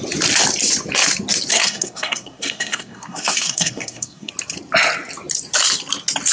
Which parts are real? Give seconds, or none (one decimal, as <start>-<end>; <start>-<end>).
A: 0.0-1.5; 4.3-6.3